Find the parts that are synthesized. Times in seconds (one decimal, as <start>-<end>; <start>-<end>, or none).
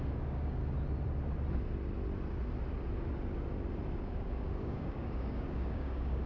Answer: 0.0-0.6; 4.0-6.3